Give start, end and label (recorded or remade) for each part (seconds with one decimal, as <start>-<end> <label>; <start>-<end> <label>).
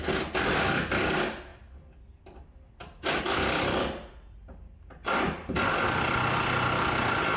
0.0-7.4 recorded